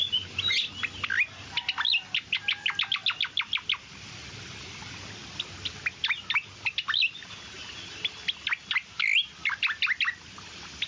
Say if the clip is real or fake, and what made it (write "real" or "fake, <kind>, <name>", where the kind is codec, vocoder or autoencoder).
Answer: real